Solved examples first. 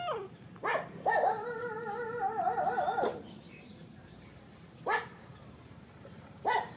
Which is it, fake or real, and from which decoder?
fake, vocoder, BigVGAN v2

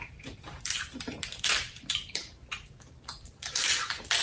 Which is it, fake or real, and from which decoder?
fake, vocoder, BigVGAN v2